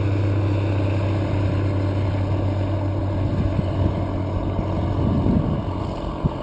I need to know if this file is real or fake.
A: real